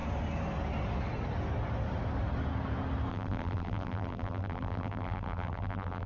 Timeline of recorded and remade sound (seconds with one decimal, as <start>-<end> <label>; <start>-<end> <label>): 0.0-3.1 recorded; 3.1-6.1 remade